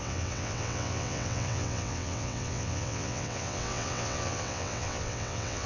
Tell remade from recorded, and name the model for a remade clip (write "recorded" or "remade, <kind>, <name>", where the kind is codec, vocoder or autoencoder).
remade, vocoder, WaveNeXt